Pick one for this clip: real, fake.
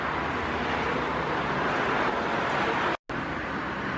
real